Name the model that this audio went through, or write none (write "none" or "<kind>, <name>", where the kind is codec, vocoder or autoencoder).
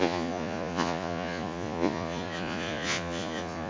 vocoder, Vocos